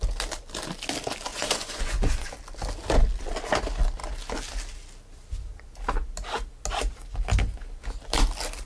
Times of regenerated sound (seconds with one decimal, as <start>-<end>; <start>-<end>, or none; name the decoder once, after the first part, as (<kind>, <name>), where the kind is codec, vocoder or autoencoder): 1.3-2.3 (vocoder, Vocos)